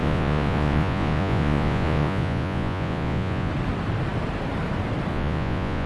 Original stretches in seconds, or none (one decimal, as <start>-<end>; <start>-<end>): 3.5-5.1

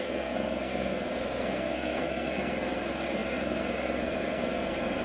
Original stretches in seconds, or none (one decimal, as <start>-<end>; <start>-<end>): none

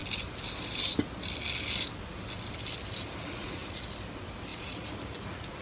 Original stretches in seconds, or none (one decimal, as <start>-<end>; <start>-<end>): 0.0-3.2; 3.8-4.5

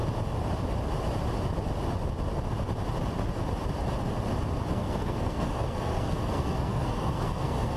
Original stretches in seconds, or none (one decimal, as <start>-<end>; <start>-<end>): 0.0-4.7

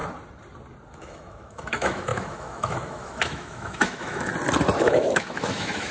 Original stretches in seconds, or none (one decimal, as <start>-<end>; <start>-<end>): 0.0-0.9; 4.3-4.8

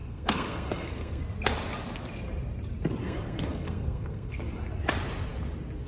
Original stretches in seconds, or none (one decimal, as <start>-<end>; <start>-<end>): 1.2-3.0; 4.4-5.9

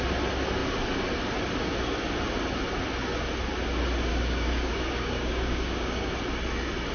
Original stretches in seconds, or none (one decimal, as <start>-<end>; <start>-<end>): 0.0-4.1; 6.1-6.9

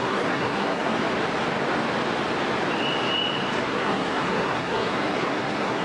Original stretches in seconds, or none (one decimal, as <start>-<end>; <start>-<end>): 1.0-3.6